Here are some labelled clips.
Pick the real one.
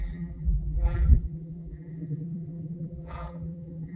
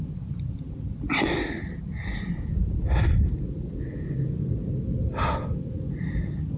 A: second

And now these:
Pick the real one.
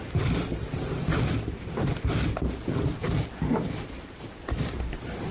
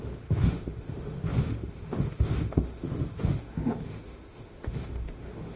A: first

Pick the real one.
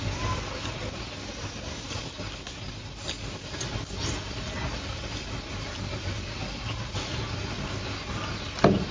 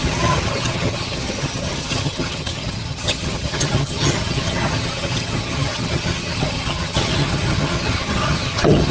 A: first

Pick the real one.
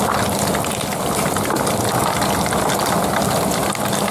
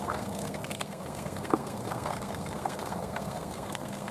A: first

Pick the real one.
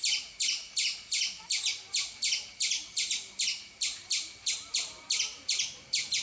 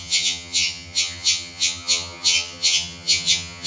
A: first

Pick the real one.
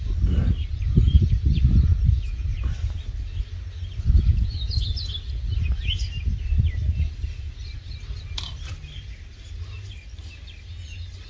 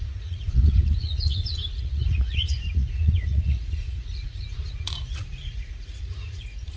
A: first